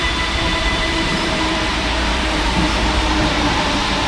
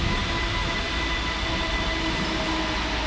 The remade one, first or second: first